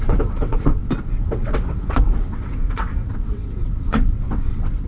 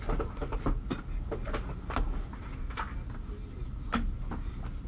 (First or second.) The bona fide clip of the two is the second